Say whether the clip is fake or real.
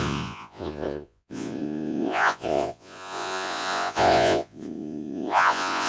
fake